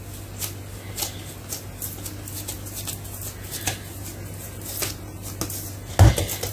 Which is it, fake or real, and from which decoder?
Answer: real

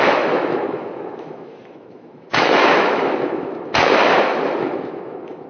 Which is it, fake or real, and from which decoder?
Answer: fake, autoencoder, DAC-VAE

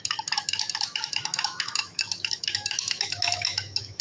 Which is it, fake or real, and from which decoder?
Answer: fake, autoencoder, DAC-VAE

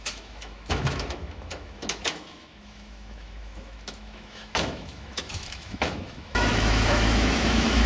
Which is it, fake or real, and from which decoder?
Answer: fake, autoencoder, DAC-VAE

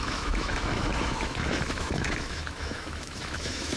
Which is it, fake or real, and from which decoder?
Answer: fake, autoencoder, DAC-VAE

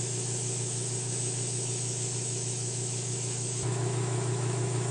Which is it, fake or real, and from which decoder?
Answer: fake, autoencoder, DAC-VAE